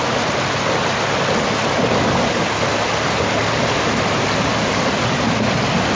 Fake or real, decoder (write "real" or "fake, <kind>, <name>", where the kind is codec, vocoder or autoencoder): real